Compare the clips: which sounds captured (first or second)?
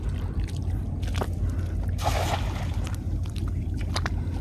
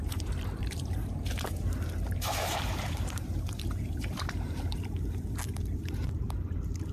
first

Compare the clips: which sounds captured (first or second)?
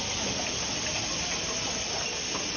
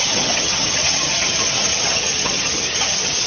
first